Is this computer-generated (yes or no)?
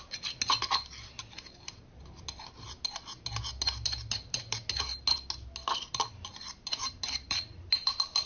no